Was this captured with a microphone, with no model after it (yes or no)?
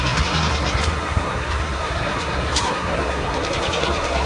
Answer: no